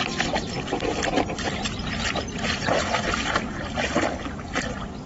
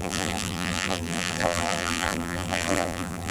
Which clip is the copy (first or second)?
second